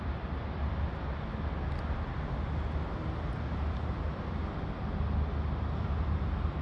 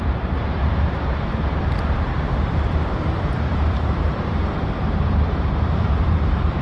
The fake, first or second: second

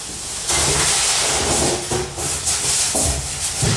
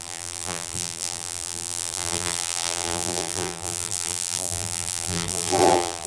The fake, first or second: second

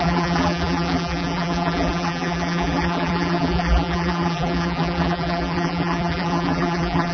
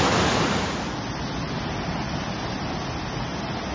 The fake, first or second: first